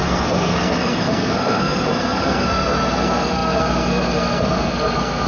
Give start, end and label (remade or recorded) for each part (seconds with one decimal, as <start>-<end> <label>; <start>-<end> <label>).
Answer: 0.0-5.3 remade